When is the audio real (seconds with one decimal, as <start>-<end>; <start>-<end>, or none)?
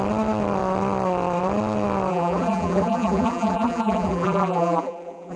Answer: 0.0-2.1